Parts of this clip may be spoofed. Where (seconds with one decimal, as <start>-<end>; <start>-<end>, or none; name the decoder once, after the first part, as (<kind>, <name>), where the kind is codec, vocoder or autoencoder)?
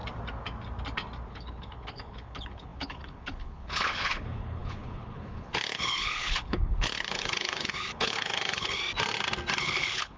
1.3-8.8 (codec, HILCodec); 9.6-10.2